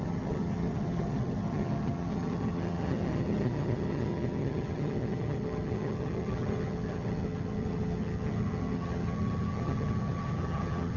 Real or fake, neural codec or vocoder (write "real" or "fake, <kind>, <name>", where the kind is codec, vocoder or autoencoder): fake, vocoder, HiFi-GAN